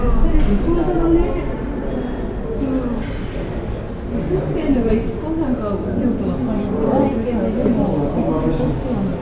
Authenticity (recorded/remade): recorded